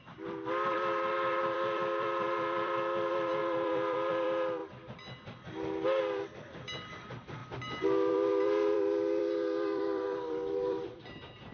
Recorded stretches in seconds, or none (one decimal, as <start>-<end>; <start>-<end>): 4.6-6.0